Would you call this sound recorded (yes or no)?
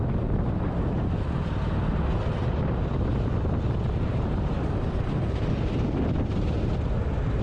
yes